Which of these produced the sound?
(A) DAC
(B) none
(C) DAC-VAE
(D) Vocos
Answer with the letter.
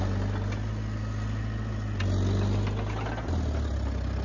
B